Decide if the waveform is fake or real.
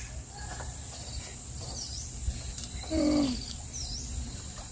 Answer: real